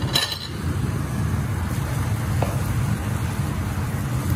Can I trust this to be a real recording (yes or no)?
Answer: yes